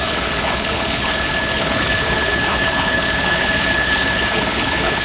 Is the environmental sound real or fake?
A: fake